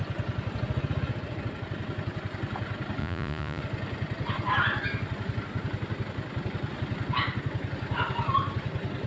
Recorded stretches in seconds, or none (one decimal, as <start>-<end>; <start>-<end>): 0.0-3.0; 3.6-9.1